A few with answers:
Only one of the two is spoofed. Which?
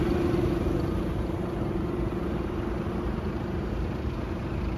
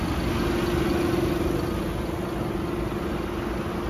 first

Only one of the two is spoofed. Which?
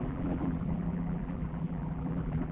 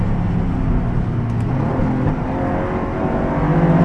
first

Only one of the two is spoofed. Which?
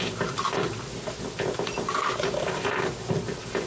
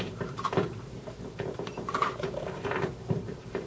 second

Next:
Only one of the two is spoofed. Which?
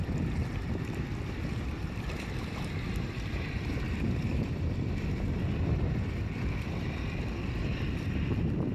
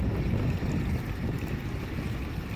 first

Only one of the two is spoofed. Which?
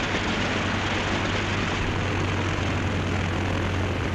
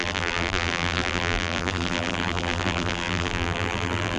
second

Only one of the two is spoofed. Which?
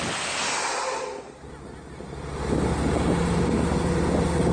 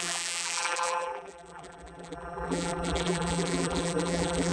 second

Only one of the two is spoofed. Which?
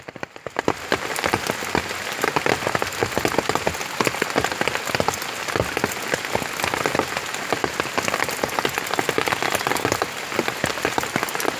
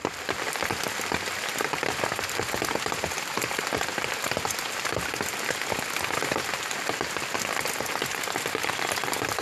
second